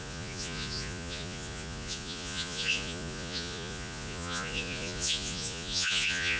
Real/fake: fake